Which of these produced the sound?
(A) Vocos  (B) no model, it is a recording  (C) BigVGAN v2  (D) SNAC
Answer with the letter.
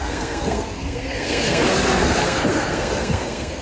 D